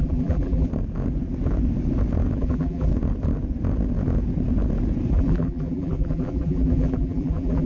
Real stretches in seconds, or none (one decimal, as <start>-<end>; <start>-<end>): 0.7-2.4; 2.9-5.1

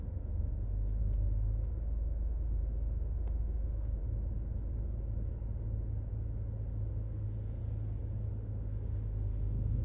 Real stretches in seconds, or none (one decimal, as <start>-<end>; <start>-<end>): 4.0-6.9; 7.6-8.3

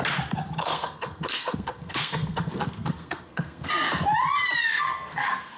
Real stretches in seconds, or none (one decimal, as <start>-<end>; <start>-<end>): 0.0-0.6; 3.7-4.7

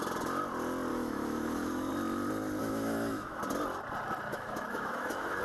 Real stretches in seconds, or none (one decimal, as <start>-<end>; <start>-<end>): 0.0-0.9; 1.9-2.6; 3.4-4.3

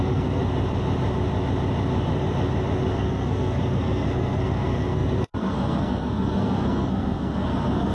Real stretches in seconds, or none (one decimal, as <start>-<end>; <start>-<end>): 0.4-2.9